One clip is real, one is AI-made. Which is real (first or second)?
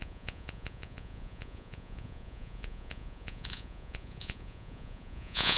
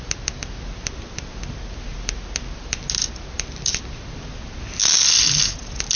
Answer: second